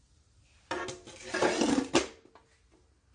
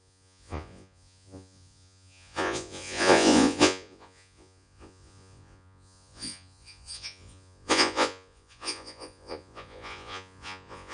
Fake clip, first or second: second